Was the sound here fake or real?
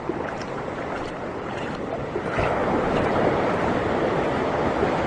fake